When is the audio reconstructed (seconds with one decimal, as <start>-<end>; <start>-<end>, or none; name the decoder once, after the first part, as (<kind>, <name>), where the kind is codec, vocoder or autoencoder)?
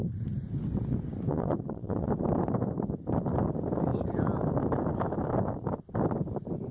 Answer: 1.3-2.1 (vocoder, WaveNeXt)